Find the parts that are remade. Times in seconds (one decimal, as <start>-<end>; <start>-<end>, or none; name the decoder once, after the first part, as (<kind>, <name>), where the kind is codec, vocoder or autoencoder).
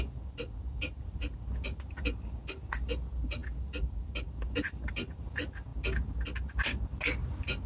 0.7-1.2 (vocoder, BigVGAN v2)